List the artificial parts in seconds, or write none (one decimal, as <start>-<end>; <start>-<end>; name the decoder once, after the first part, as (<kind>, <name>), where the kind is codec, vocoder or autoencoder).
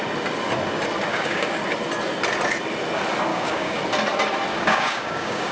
1.1-1.6 (codec, DAC); 3.3-3.8; 4.5-5.5